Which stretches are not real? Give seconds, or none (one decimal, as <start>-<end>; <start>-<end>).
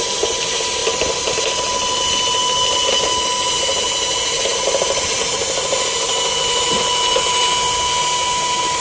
none